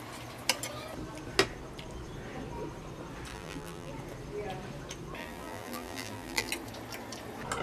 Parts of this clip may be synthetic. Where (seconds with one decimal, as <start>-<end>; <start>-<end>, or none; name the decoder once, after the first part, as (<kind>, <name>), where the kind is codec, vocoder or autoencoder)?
3.3-3.9 (vocoder, BigVGAN v2); 5.2-6.5